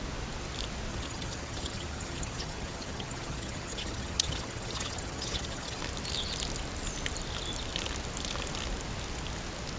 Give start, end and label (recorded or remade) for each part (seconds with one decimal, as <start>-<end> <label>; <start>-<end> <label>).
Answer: 0.0-0.9 recorded; 0.9-5.8 remade; 5.8-9.8 recorded